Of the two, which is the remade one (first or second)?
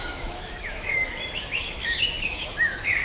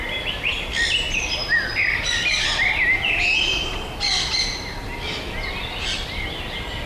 first